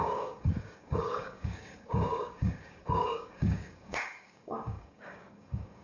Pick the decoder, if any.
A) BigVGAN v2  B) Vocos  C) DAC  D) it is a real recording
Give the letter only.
C